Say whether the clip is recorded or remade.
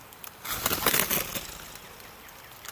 recorded